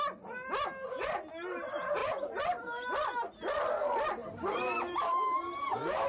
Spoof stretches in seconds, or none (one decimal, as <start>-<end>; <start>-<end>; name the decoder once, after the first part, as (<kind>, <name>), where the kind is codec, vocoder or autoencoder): 4.2-5.6 (vocoder, BigVGAN v2)

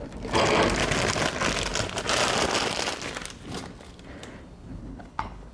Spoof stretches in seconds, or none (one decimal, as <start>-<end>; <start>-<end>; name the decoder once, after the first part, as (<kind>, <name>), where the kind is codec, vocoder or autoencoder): 4.8-5.5 (codec, HILCodec)

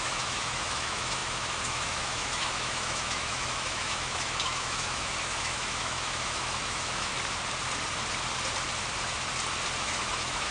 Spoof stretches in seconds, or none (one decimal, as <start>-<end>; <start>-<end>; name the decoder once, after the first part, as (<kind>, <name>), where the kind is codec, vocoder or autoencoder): 0.0-7.1 (autoencoder, DAC-VAE); 9.8-10.5

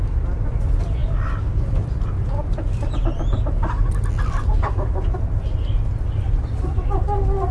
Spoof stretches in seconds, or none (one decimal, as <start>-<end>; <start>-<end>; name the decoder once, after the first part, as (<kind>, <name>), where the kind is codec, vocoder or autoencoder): none

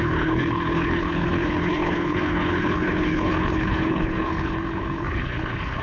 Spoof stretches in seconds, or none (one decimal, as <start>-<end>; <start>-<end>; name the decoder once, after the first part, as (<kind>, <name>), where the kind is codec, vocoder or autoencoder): 0.0-5.8 (codec, HILCodec)

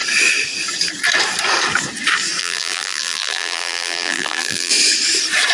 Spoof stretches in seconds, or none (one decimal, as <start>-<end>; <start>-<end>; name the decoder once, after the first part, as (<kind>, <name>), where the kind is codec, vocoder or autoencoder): 2.4-4.7 (vocoder, BigVGAN v2)